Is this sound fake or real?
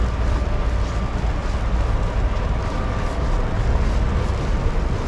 real